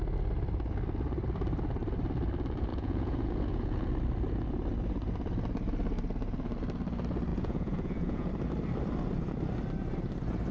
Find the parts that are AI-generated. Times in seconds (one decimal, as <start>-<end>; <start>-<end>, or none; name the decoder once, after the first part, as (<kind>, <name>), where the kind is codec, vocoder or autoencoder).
2.7-3.9 (vocoder, Vocos); 7.3-8.3